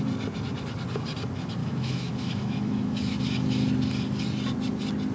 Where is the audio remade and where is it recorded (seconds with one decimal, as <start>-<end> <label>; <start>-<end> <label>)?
0.0-1.6 recorded; 1.6-3.2 remade; 3.2-5.1 recorded